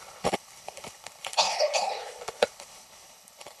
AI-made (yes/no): yes